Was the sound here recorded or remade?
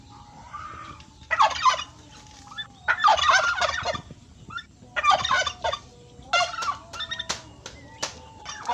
recorded